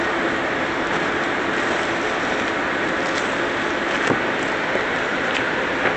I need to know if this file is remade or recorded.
recorded